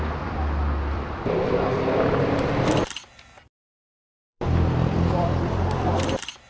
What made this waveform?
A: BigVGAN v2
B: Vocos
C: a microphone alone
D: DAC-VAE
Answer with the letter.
A